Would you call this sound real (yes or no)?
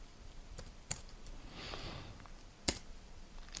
no